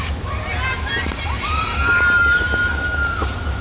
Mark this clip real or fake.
real